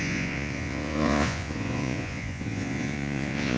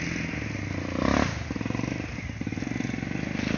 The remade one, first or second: first